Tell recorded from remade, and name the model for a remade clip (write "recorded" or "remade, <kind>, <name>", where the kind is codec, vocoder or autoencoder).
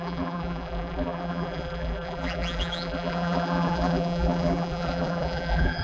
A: remade, vocoder, BigVGAN v2